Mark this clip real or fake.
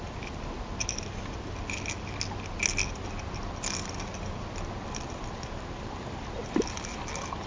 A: real